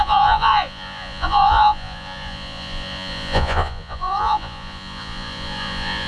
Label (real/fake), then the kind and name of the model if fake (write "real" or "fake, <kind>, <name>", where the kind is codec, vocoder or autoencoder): fake, vocoder, Vocos